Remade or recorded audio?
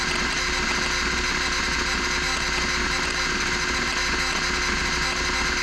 recorded